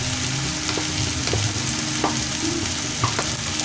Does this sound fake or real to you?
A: real